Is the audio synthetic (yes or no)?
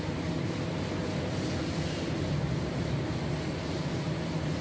no